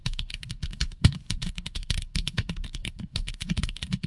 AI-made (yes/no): yes